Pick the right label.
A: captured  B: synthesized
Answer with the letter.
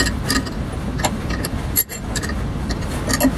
A